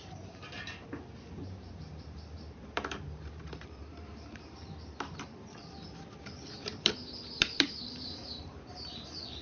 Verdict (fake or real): fake